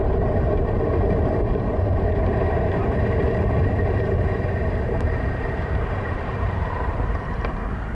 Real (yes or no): no